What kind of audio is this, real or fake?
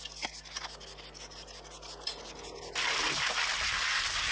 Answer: real